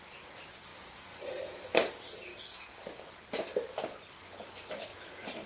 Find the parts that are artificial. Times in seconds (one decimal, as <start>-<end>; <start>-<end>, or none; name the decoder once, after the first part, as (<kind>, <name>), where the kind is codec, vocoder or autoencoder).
2.3-2.8 (codec, SNAC)